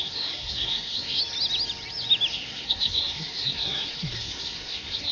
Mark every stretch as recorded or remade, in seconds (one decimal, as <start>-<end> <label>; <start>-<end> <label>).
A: 0.0-1.2 remade; 1.2-2.3 recorded; 2.3-5.1 remade